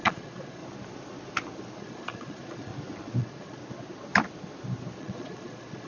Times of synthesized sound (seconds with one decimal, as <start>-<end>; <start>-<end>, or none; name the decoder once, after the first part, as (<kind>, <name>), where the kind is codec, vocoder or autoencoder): 0.0-0.6 (vocoder, Vocos); 1.8-2.7; 3.2-3.6; 5.0-5.9